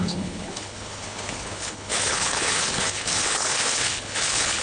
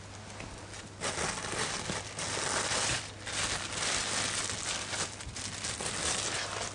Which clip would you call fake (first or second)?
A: first